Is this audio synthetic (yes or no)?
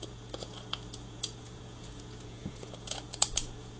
yes